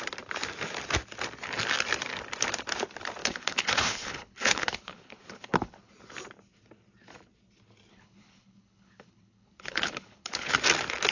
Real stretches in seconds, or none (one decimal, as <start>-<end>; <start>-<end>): 0.0-3.2; 5.9-7.9; 10.5-11.1